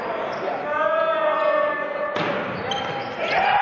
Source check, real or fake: real